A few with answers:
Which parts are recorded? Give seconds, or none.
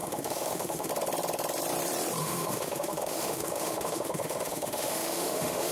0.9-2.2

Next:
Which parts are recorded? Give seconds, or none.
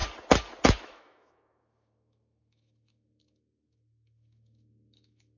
0.0-0.8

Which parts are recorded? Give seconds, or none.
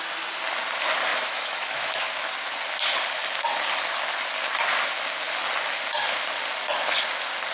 0.0-1.1; 2.0-7.5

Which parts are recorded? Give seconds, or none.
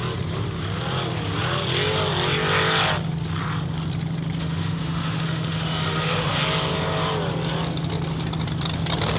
0.0-4.4; 6.4-9.2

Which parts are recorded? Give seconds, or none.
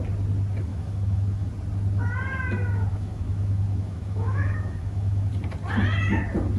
0.0-0.7; 1.5-2.9; 5.3-6.6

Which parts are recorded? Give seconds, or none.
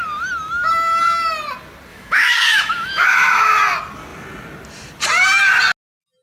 0.0-1.9; 3.6-6.2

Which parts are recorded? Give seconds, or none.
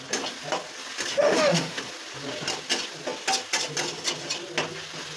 0.0-1.1; 1.8-5.2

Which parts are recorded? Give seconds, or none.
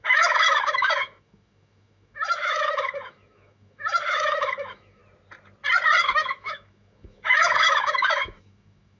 5.0-6.0